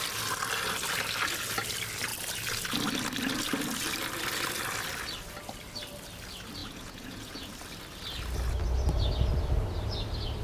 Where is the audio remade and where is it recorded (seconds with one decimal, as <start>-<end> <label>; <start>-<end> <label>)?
0.0-6.6 recorded; 6.6-7.5 remade; 7.5-10.4 recorded